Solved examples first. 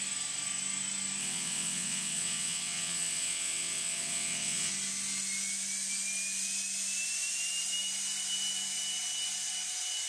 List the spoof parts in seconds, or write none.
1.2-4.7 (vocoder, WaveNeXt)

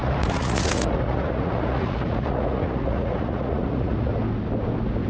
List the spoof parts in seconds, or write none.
0.0-4.1 (vocoder, Vocos)

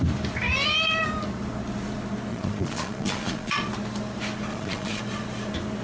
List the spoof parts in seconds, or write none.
2.3-3.6 (vocoder, Vocos); 4.5-5.0

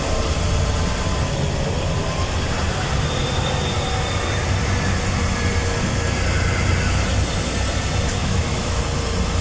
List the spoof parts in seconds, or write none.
8.2-8.8 (autoencoder, DAC-VAE)